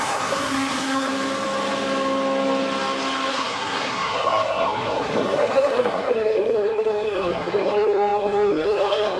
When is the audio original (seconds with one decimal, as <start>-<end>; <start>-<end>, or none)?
1.1-3.3